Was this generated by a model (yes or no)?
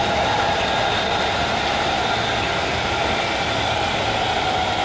no